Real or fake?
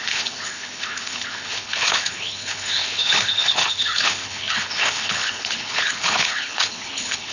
fake